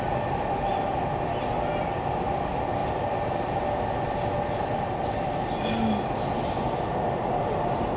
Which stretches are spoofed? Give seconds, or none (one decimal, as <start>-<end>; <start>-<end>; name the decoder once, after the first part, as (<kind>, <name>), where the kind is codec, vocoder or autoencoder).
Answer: 2.8-3.5 (vocoder, BigVGAN v2)